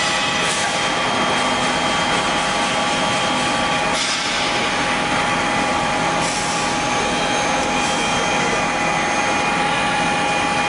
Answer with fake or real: real